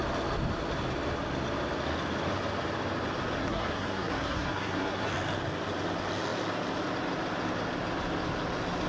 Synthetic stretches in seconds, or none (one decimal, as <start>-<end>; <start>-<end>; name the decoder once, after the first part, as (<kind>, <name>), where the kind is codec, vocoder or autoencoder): 3.4-5.1 (codec, SNAC)